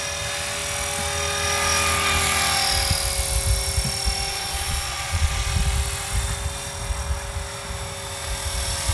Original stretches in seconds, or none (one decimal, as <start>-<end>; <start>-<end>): 0.0-4.3; 5.3-8.9